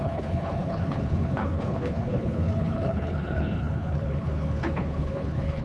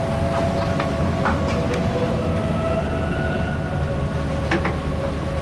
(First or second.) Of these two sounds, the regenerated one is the first